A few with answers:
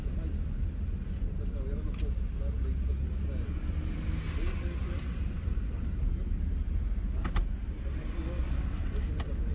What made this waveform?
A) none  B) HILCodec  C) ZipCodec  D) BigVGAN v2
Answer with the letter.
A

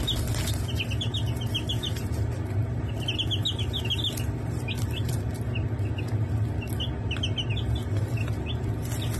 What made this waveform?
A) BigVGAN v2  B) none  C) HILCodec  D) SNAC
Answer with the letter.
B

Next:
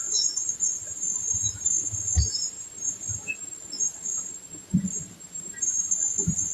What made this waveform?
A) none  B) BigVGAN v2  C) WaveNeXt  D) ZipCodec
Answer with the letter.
B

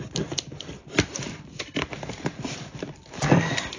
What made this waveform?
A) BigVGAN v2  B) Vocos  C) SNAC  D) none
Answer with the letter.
A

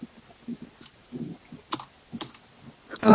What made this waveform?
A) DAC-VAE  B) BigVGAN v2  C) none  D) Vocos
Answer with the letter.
C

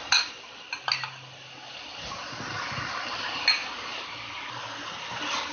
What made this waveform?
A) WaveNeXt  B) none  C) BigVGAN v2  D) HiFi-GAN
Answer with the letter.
B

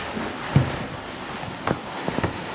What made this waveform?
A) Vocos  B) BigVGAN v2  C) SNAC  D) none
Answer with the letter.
D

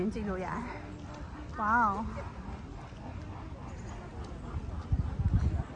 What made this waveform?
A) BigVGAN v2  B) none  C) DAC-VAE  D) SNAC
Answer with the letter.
B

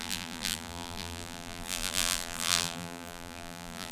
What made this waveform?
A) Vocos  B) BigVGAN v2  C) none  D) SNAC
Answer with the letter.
B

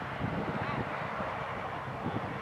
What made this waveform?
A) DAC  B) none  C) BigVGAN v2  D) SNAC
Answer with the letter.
B